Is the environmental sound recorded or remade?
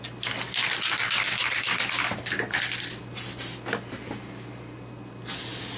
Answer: recorded